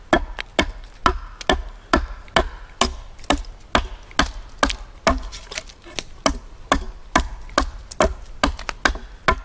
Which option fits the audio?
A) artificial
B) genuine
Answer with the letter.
B